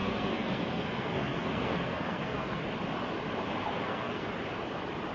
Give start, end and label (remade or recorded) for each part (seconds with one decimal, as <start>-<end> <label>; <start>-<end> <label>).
0.0-2.6 remade; 2.6-3.8 recorded; 3.8-4.3 remade; 4.3-5.1 recorded